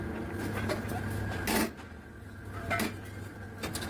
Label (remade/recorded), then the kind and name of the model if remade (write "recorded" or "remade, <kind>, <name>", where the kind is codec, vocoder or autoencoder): recorded